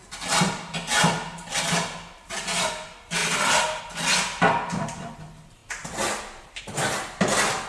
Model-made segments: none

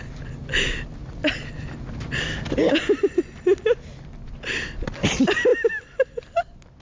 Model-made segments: none

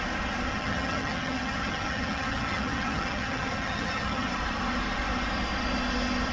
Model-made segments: 0.5-4.3 (vocoder, HiFi-GAN)

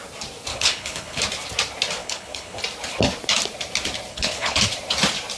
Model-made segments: 0.5-1.2 (codec, HILCodec); 2.0-2.6; 4.1-4.6

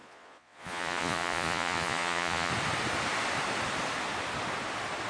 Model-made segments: 0.0-2.5 (vocoder, Vocos)

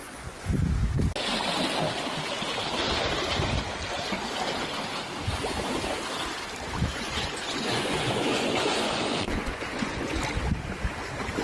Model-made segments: 0.0-0.5 (vocoder, Vocos); 6.9-10.2

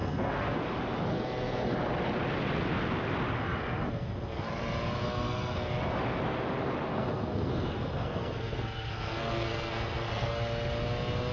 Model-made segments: 0.0-0.6 (codec, SNAC); 3.4-4.5; 5.0-5.7; 6.9-10.4